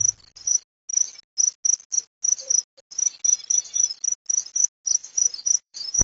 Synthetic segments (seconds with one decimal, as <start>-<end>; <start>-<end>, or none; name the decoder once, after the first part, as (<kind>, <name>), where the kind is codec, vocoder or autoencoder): 5.0-6.0 (vocoder, Vocos)